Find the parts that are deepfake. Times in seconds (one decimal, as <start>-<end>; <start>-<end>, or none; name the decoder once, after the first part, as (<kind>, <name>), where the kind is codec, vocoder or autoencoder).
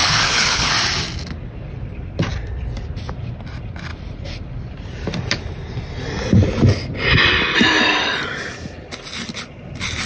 0.0-0.7 (codec, HILCodec)